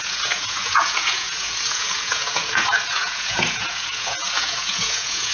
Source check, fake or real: fake